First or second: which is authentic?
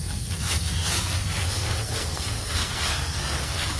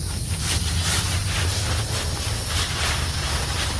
second